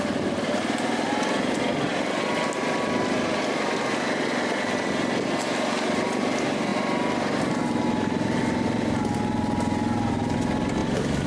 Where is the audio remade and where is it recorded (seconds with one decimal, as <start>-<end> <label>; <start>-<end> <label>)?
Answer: 0.0-11.3 recorded